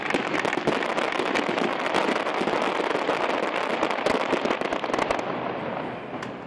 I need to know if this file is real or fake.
real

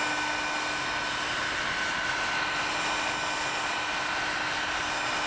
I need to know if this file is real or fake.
real